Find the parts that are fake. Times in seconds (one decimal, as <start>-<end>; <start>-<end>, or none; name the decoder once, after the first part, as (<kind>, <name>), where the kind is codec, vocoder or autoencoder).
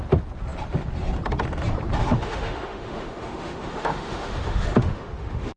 2.0-5.6 (autoencoder, DAC-VAE)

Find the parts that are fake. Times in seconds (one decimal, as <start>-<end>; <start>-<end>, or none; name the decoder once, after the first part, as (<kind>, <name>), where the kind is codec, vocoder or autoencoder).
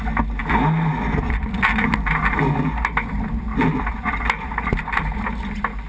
none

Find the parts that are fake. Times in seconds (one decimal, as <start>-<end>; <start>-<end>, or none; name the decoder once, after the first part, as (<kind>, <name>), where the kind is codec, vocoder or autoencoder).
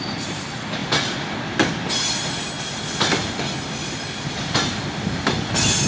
none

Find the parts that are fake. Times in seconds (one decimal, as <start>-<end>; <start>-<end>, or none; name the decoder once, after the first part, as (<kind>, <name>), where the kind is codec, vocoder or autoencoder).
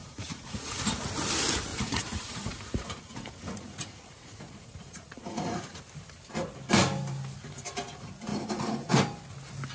0.0-1.0 (vocoder, Vocos); 1.7-5.8; 8.3-8.9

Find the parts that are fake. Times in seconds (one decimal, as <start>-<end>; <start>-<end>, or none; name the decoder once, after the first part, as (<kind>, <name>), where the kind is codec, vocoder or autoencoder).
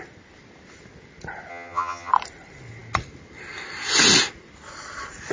1.5-2.1 (vocoder, HiFi-GAN)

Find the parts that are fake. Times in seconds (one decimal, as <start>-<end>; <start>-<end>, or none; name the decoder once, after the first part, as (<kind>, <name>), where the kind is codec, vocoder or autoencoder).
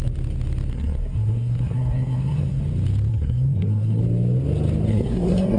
0.7-2.6 (codec, SNAC); 3.1-4.0; 4.9-5.6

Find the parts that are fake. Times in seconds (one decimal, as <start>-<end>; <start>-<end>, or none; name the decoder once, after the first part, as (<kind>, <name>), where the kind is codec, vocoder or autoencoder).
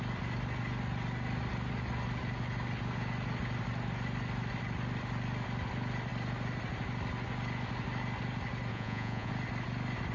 8.7-9.3 (vocoder, Vocos)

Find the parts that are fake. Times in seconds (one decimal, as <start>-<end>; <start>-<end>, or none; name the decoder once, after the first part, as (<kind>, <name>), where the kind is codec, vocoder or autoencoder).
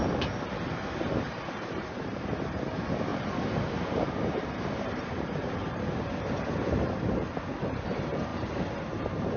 1.1-9.4 (vocoder, BigVGAN v2)